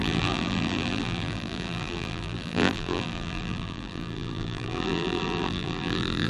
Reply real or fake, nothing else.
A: fake